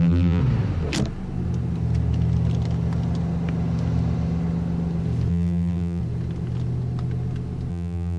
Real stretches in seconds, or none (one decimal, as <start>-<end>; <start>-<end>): 0.4-5.3; 6.0-7.7